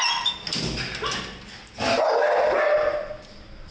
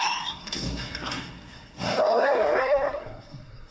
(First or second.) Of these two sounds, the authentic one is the first